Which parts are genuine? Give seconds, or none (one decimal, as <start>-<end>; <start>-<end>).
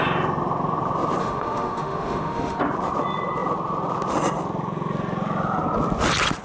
0.0-1.2; 2.6-6.4